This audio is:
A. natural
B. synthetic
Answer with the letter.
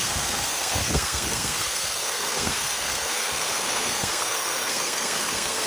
B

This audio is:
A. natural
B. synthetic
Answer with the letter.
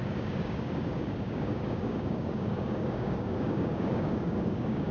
B